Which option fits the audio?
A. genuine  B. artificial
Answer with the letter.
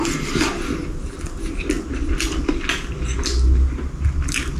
A